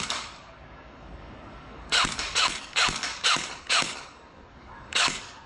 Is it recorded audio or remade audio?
remade